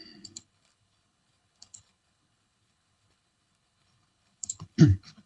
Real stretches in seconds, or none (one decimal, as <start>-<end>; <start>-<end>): none